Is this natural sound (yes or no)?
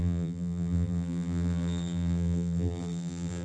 no